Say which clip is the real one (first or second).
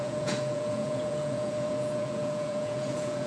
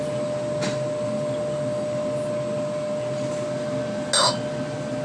second